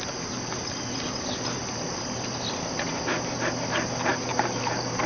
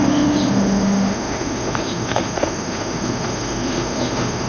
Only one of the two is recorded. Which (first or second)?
first